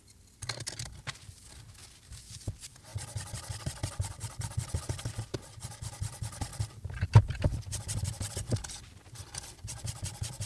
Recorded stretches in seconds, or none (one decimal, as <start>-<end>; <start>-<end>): 0.0-10.5